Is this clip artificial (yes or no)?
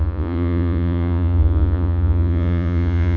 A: yes